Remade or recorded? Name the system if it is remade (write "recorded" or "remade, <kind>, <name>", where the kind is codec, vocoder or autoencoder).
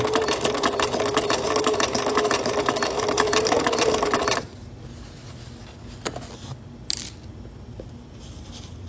recorded